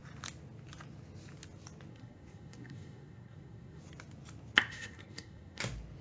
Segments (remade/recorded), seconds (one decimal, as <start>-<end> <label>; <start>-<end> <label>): 0.0-1.9 recorded; 1.9-3.8 remade; 3.8-4.7 recorded; 4.7-5.6 remade; 5.6-6.0 recorded

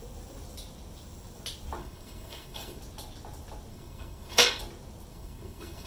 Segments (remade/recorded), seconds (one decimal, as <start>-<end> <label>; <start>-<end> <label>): 0.0-1.8 recorded; 1.8-2.8 remade; 2.8-3.7 recorded; 3.7-4.6 remade; 4.6-5.1 recorded; 5.1-5.9 remade

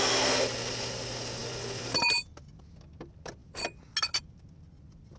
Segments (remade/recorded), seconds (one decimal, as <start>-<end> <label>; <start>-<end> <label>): 0.0-5.2 recorded

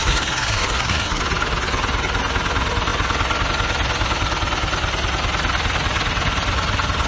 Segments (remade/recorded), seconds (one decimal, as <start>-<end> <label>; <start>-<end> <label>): 0.0-1.2 remade; 1.2-7.1 recorded

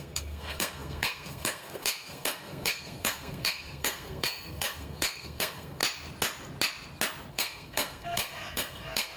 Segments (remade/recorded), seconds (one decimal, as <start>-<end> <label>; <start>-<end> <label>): 0.0-5.8 remade; 5.8-7.3 recorded; 7.3-9.2 remade

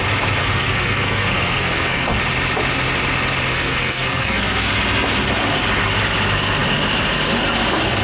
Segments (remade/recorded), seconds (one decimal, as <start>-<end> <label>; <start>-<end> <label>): 0.0-0.4 recorded; 0.4-2.2 remade; 2.2-3.5 recorded; 3.5-4.7 remade; 4.7-8.0 recorded